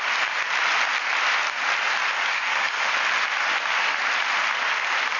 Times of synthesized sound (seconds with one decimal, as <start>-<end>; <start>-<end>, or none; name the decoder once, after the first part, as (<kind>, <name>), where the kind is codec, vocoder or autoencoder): 2.3-2.9 (codec, SNAC)